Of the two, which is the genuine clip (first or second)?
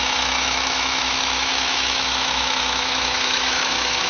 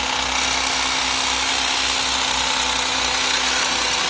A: second